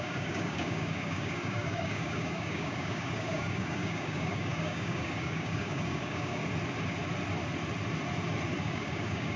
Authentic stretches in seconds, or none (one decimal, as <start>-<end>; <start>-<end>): 6.4-8.6